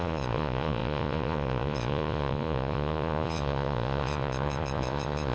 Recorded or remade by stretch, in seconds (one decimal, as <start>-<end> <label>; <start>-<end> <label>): 0.0-5.3 remade